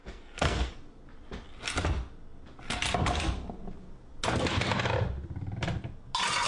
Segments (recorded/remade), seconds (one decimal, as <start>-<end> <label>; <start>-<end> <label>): 0.0-0.7 remade; 0.7-6.5 recorded